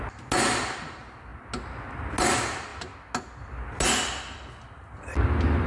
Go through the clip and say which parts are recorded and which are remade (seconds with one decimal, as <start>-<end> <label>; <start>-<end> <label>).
0.0-5.7 recorded